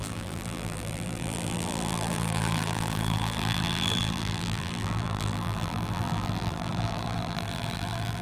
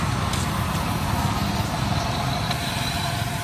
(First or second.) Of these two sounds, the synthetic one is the first